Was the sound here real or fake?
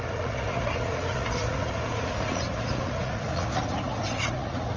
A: fake